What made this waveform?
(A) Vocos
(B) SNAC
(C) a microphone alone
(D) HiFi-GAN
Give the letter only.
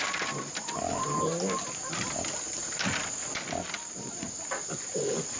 C